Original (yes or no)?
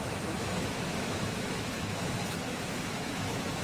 no